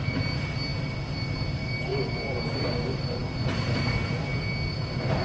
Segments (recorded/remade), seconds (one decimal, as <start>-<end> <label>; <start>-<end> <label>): 0.0-1.9 recorded; 1.9-2.6 remade; 2.6-5.2 recorded